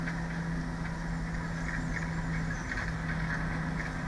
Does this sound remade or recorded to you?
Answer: recorded